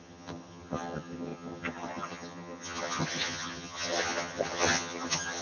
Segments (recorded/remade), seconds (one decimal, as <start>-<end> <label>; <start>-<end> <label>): 0.0-5.4 remade